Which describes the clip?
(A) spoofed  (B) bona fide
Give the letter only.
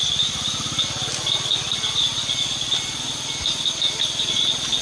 B